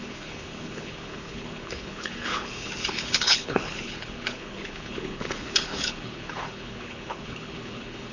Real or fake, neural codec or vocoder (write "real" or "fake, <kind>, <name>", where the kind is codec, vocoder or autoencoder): fake, codec, HILCodec